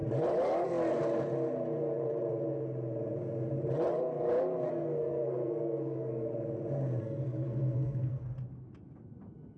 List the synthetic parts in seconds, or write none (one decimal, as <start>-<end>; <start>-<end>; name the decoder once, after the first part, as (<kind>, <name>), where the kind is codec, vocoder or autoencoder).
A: 4.7-6.3 (codec, SNAC); 7.0-8.2